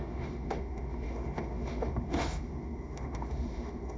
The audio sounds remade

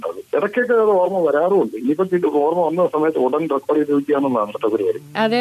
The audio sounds recorded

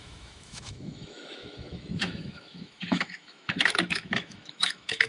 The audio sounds remade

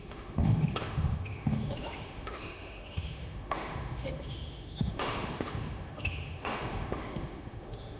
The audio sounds remade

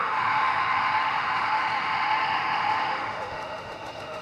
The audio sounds remade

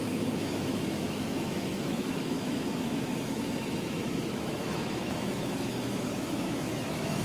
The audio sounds remade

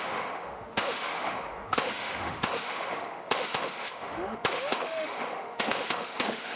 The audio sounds remade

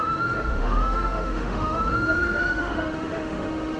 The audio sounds remade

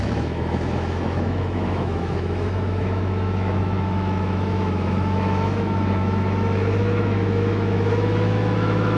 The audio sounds remade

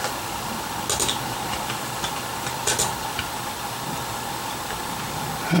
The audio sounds recorded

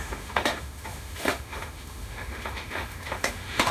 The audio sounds remade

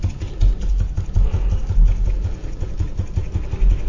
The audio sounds recorded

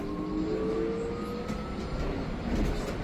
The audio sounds recorded